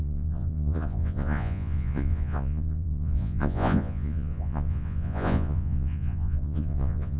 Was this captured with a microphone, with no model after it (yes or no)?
no